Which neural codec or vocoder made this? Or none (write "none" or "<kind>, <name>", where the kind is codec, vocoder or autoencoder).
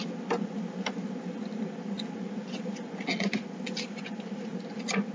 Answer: none